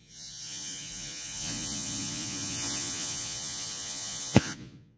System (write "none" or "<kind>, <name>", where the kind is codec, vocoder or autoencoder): vocoder, Vocos